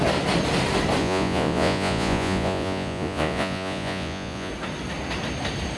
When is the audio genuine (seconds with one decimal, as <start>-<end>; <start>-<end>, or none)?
0.0-1.0; 4.5-5.8